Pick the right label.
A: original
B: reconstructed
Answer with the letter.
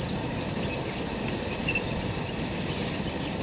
A